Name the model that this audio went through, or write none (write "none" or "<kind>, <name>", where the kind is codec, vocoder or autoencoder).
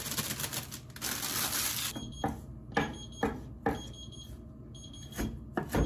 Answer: none